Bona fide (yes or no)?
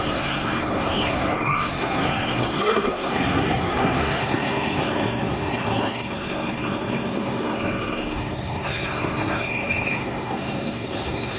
no